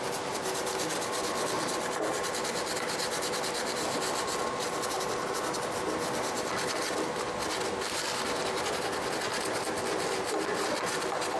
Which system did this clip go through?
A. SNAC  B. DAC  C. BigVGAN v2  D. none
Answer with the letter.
D